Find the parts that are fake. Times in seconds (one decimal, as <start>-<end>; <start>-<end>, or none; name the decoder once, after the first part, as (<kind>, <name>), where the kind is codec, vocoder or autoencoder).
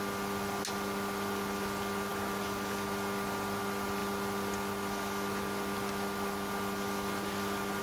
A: none